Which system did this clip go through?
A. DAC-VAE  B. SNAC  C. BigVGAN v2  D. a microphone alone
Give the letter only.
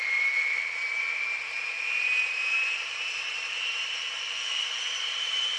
C